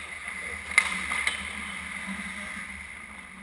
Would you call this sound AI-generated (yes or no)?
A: no